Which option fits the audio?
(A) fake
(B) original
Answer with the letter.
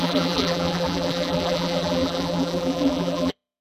A